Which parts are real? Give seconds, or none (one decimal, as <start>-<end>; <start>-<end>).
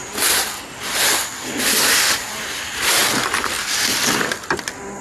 0.0-5.0